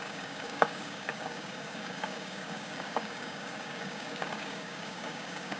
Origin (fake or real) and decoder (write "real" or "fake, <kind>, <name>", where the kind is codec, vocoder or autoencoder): fake, codec, DAC